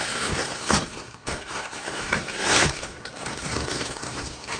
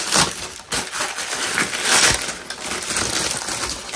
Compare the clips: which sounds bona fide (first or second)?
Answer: second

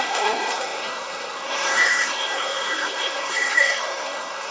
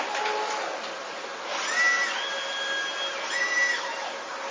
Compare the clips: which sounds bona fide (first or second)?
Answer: second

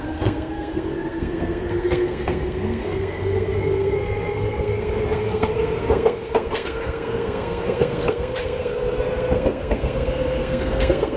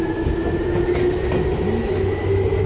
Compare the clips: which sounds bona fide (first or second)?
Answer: second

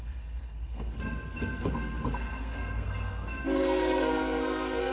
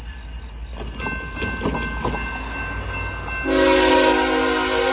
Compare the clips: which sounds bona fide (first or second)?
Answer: second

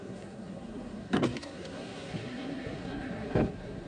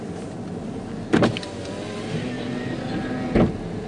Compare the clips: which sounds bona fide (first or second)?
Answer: second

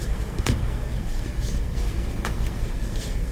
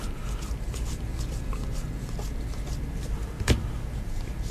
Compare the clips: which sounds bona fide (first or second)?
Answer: second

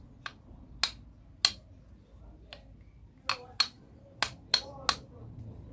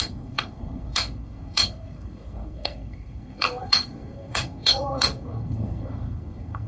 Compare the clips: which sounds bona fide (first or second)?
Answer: first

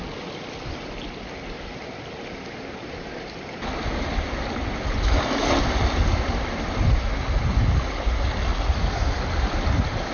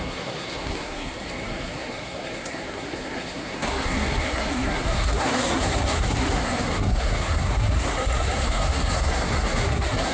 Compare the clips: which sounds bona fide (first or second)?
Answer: first